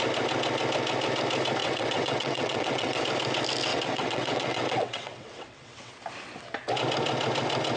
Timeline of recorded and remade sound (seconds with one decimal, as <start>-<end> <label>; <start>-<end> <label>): 0.0-1.6 recorded; 1.6-3.0 remade; 3.0-3.7 recorded; 3.7-5.9 remade; 5.9-7.8 recorded